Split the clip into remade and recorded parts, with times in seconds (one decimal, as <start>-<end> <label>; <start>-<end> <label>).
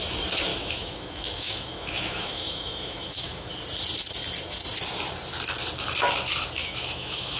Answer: 0.0-0.5 recorded; 0.5-3.5 remade; 3.5-6.6 recorded; 6.6-7.4 remade